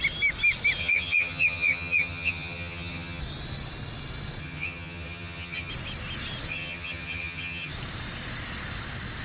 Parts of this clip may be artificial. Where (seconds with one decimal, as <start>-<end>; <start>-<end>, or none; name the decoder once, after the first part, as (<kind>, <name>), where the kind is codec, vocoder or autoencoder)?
0.8-3.2 (vocoder, HiFi-GAN); 4.4-5.7; 6.5-7.7